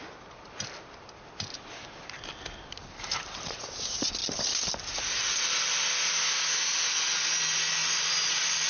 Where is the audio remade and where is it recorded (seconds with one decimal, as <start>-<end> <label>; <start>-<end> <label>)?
0.0-2.8 recorded; 2.8-3.7 remade; 3.7-7.8 recorded; 7.8-8.7 remade